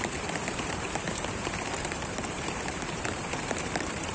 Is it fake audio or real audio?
fake